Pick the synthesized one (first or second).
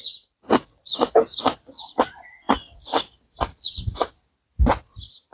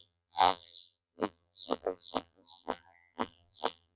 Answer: second